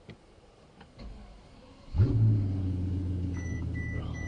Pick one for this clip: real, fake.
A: fake